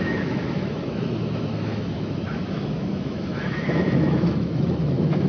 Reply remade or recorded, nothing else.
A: remade